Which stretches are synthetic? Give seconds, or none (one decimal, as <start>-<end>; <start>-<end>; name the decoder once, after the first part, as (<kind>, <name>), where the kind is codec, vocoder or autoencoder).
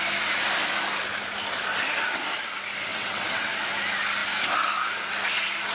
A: 2.9-3.5 (vocoder, WaveNeXt)